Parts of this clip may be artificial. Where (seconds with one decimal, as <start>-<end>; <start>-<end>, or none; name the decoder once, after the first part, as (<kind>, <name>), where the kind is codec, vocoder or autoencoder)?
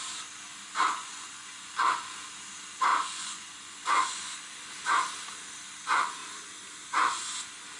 1.0-1.7 (vocoder, Vocos); 2.9-4.4